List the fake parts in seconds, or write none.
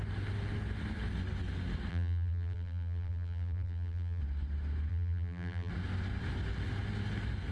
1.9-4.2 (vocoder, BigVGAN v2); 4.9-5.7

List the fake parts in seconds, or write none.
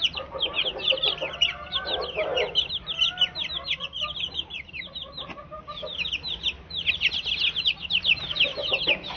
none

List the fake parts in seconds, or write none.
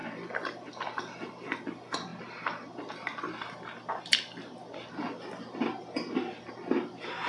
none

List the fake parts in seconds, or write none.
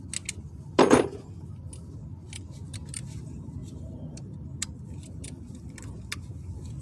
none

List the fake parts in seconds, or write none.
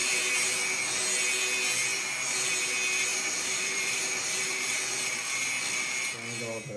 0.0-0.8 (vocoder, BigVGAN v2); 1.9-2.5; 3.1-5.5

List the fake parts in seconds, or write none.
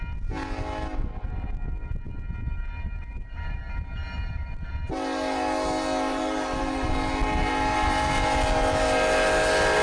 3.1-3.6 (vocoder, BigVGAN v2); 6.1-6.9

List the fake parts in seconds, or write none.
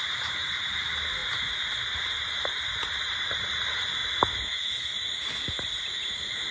0.0-1.2 (vocoder, BigVGAN v2); 2.0-4.0; 5.8-6.5